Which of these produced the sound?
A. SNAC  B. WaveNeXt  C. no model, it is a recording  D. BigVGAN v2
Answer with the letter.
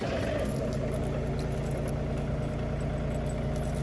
C